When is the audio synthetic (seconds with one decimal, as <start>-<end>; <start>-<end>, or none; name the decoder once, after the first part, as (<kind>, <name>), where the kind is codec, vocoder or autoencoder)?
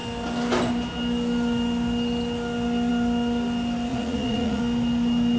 3.9-4.6 (vocoder, Vocos)